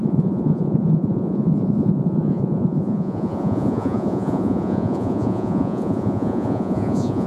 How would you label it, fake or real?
fake